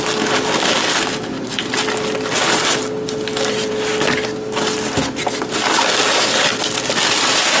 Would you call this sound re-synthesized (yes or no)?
no